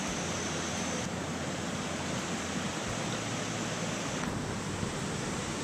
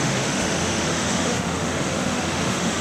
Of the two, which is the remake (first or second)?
second